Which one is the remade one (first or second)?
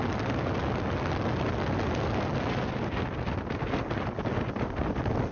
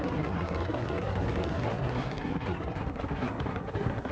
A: second